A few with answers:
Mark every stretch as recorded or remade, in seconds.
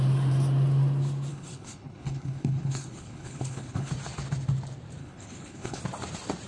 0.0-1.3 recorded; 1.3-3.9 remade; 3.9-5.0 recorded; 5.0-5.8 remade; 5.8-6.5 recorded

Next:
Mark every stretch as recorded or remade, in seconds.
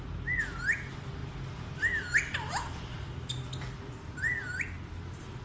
0.0-1.2 recorded; 1.2-4.4 remade; 4.4-5.4 recorded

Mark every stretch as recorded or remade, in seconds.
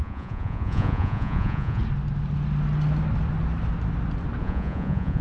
0.0-1.8 remade; 1.8-4.4 recorded; 4.4-5.2 remade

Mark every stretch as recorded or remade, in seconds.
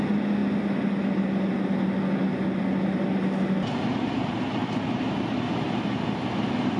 0.0-4.6 recorded; 4.6-5.4 remade; 5.4-6.8 recorded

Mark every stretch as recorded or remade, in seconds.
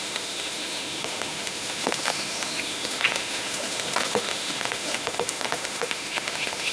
0.0-6.7 remade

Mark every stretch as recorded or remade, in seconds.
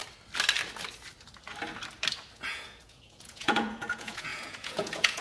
0.0-2.4 recorded; 2.4-5.2 remade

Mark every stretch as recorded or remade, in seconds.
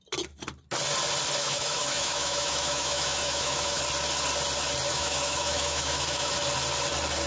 0.0-1.4 recorded; 1.4-3.8 remade; 3.8-4.9 recorded; 4.9-6.3 remade; 6.3-7.3 recorded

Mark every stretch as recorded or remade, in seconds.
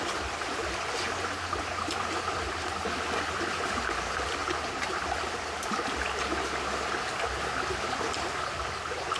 0.0-9.2 recorded